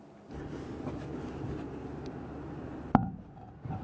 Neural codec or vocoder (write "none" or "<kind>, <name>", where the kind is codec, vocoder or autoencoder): none